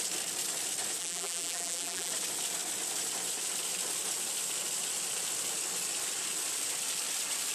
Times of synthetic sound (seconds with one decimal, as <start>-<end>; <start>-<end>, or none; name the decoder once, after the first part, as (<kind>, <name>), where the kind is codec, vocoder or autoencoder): 1.0-2.1 (vocoder, BigVGAN v2)